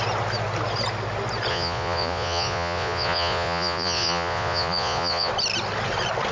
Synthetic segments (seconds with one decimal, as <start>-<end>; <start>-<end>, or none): 1.5-5.3